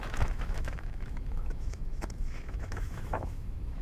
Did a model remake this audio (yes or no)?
yes